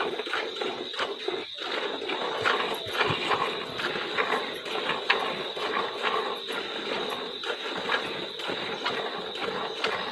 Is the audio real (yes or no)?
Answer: yes